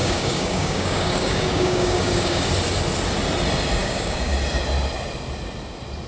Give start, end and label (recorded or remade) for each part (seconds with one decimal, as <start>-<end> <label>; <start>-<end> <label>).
0.0-2.5 remade; 2.5-3.8 recorded; 3.8-4.3 remade; 4.3-6.1 recorded